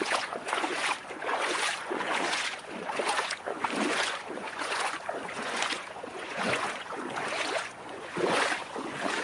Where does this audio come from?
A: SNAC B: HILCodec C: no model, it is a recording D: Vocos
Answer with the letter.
D